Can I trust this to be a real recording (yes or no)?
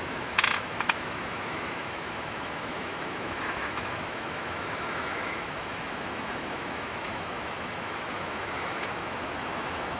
no